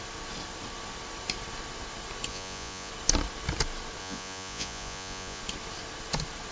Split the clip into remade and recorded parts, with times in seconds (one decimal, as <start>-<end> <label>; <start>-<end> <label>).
0.0-2.3 recorded; 2.3-2.9 remade; 2.9-4.0 recorded; 4.0-5.4 remade; 5.4-6.5 recorded